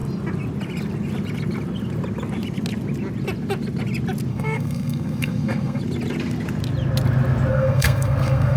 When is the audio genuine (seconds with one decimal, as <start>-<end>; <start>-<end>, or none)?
0.0-4.3; 5.8-7.5